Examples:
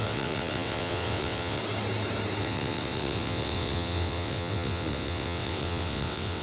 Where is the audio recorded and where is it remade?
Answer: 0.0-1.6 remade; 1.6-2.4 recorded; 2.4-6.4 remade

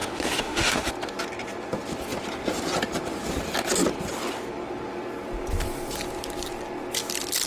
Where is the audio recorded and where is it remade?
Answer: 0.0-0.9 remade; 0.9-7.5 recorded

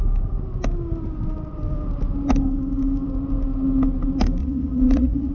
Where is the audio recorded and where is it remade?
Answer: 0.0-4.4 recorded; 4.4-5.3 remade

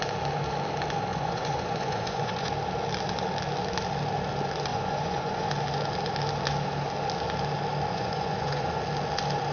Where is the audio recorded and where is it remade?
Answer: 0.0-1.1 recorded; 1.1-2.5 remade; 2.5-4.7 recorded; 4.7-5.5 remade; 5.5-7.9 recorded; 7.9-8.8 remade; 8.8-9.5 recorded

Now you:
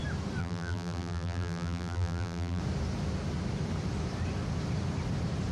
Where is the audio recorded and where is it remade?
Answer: 0.0-0.4 recorded; 0.4-2.6 remade; 2.6-5.5 recorded

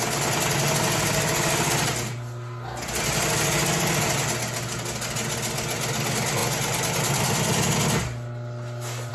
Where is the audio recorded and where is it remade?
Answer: 0.0-9.1 recorded